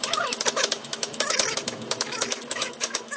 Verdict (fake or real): fake